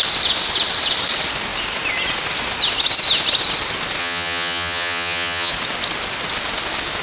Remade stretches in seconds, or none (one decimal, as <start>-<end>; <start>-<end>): 4.0-5.5